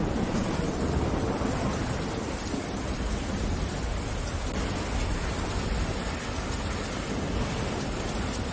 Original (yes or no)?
yes